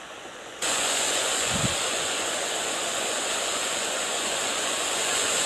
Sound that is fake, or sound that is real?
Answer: fake